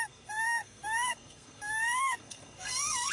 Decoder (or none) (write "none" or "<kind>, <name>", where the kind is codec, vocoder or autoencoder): codec, SNAC